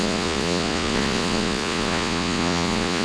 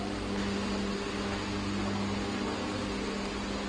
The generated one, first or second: first